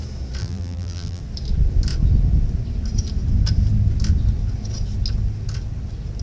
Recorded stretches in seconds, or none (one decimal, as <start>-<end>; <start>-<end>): 0.0-0.4; 1.2-6.2